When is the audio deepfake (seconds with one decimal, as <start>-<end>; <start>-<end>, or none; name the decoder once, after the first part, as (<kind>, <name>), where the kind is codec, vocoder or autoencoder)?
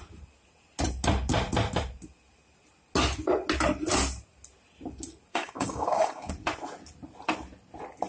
5.3-6.3 (codec, DAC)